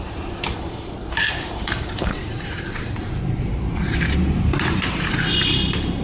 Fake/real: fake